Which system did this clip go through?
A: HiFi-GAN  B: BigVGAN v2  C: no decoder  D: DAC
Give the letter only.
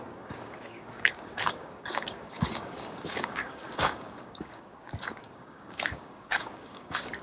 D